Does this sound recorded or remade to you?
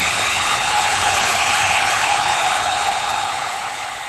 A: remade